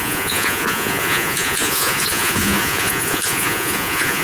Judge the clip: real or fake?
fake